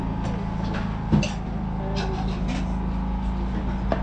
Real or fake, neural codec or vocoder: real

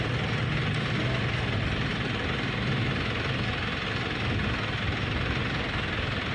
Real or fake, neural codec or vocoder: real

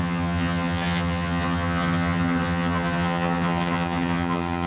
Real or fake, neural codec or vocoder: fake, vocoder, HiFi-GAN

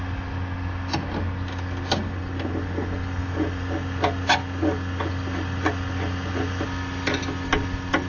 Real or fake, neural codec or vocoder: real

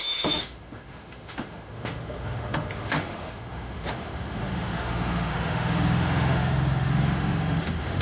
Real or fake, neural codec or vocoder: fake, autoencoder, DAC-VAE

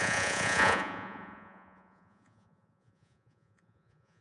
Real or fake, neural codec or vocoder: fake, vocoder, Vocos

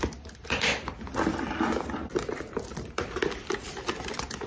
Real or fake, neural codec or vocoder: real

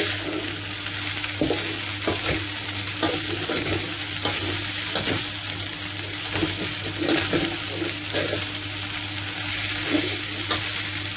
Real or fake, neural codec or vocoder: real